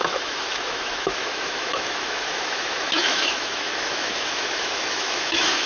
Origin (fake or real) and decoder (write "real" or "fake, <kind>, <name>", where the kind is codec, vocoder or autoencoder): fake, autoencoder, DAC-VAE